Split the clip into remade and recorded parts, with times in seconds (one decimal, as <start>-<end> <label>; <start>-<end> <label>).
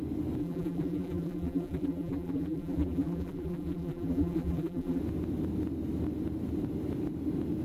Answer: 0.0-0.4 recorded; 0.4-5.0 remade; 5.0-7.6 recorded